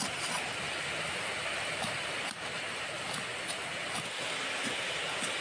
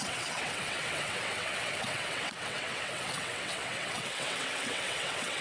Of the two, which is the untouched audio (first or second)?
first